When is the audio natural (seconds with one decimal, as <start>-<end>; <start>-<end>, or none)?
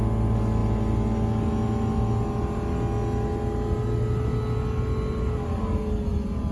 0.0-6.5